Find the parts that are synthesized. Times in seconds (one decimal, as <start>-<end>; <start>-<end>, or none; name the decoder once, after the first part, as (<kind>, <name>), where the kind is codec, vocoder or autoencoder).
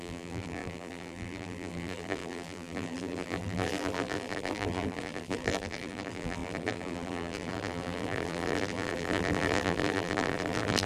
0.0-10.9 (vocoder, BigVGAN v2)